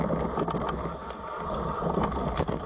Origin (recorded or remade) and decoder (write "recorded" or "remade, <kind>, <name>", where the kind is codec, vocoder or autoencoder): recorded